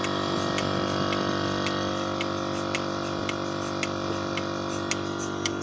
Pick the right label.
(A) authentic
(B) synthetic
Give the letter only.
A